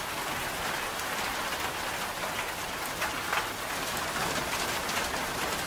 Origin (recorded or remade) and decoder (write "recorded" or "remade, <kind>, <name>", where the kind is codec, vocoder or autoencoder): recorded